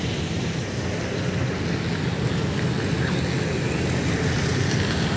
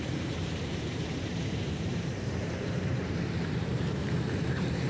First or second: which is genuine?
first